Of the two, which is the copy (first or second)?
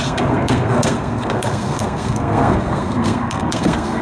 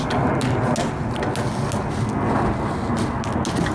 first